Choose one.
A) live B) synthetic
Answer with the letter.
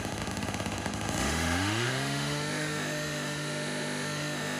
B